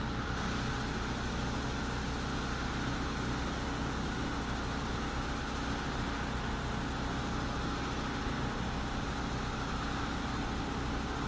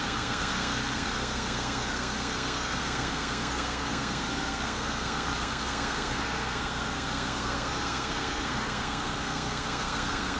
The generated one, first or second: second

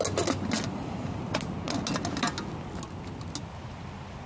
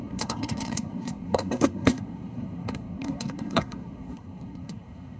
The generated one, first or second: second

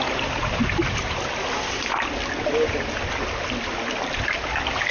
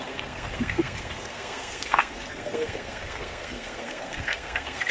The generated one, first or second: second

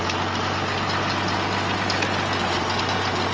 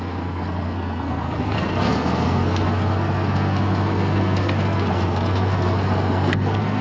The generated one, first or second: second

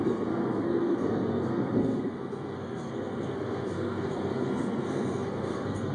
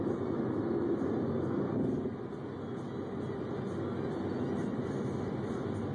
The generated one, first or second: first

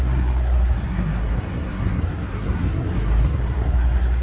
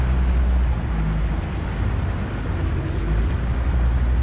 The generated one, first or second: first